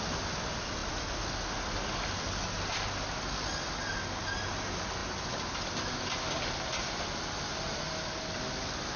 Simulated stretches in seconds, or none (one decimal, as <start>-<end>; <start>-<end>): none